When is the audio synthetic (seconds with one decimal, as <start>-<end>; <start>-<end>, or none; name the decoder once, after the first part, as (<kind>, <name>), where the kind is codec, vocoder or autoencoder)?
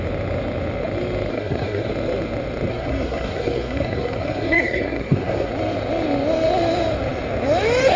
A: 1.3-1.9 (codec, SNAC); 2.7-5.5